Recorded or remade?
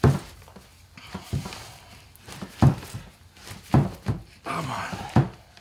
recorded